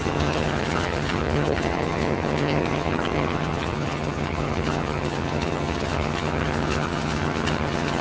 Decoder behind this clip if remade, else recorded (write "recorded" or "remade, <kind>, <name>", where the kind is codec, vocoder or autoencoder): remade, vocoder, HiFi-GAN